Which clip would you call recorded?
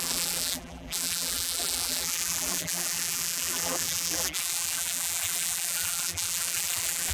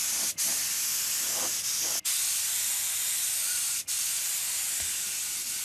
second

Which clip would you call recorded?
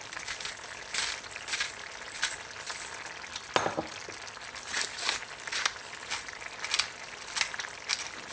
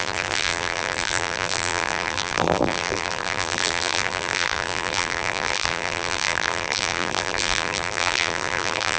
first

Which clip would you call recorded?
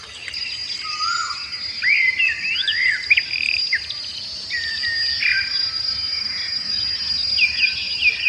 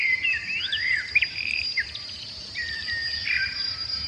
first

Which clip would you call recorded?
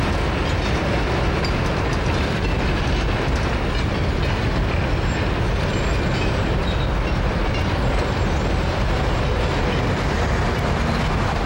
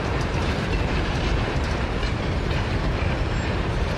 first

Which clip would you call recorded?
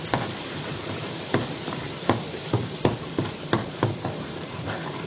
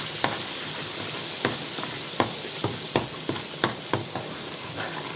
second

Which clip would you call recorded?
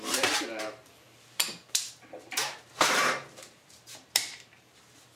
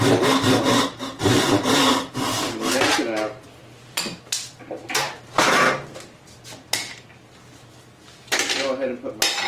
second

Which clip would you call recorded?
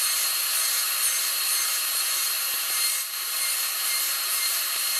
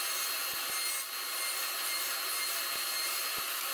second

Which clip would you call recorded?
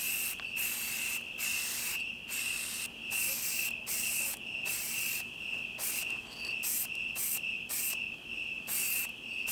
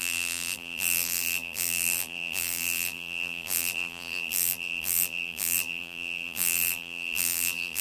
first